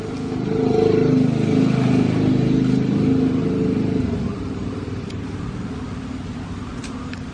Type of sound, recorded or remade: recorded